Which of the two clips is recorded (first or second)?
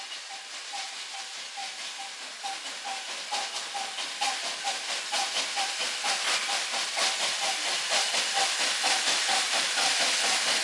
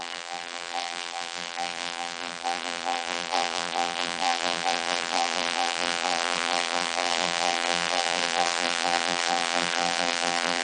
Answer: first